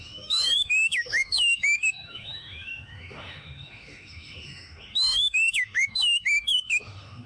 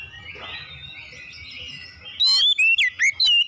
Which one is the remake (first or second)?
first